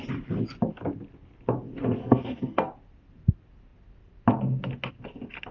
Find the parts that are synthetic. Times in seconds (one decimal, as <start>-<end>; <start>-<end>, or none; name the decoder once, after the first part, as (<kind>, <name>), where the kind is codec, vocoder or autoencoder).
2.0-2.7 (codec, SNAC)